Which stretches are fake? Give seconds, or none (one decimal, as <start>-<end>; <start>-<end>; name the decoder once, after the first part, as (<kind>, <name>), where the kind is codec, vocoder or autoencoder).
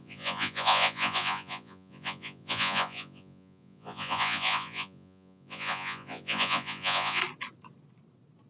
0.0-7.2 (vocoder, Vocos)